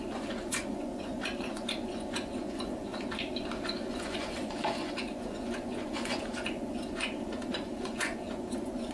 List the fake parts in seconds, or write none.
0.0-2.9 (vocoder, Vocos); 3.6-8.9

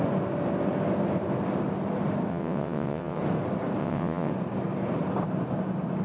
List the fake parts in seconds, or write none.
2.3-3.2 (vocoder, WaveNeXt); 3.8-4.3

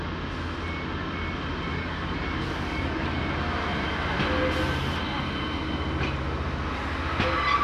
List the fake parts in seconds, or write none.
1.7-3.2 (codec, DAC)

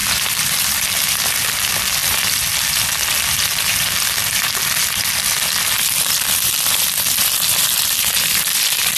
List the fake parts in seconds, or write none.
0.0-1.3 (vocoder, BigVGAN v2); 7.2-9.0

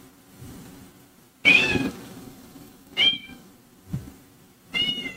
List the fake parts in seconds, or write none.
1.5-3.5 (codec, DAC)

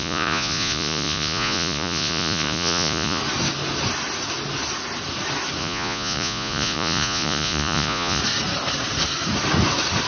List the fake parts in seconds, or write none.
0.0-3.2 (vocoder, Vocos); 5.6-8.2

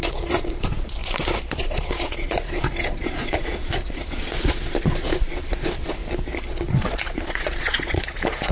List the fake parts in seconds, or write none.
0.0-6.0 (vocoder, Vocos); 6.5-8.5

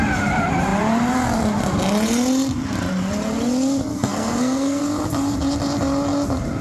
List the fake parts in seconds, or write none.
3.9-4.8 (codec, SNAC)